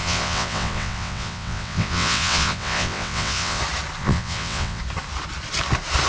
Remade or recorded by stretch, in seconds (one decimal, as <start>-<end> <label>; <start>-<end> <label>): 0.0-3.6 remade; 3.6-4.0 recorded; 4.0-4.8 remade; 4.8-6.1 recorded